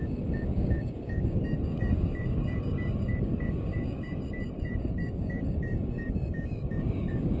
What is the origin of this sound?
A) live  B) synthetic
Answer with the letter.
B